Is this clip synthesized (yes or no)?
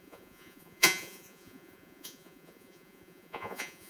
yes